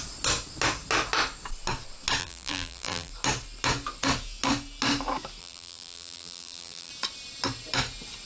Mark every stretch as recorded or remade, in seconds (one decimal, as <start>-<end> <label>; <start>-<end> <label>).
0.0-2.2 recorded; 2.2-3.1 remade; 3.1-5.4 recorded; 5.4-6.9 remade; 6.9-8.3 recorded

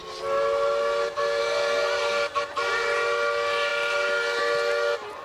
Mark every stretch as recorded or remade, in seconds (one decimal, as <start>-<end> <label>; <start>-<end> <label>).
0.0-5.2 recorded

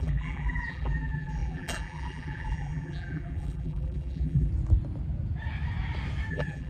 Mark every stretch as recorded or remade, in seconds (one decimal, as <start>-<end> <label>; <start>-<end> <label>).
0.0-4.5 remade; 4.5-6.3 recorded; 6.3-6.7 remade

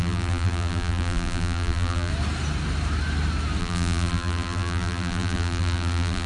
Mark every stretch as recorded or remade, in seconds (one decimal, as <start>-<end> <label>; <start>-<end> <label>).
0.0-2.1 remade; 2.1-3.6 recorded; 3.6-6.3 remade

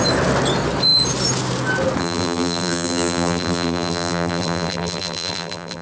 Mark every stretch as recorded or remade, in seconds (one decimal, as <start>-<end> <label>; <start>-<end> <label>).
0.0-2.0 recorded; 2.0-5.8 remade